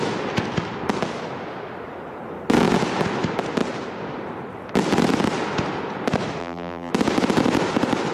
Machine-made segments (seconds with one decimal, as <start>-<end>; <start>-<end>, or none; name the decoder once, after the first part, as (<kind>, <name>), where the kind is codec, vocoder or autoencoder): 6.4-6.9 (vocoder, BigVGAN v2)